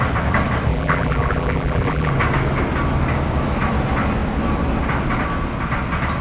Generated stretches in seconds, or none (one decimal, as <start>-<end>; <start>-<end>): 0.7-2.1